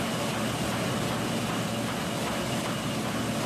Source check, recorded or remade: recorded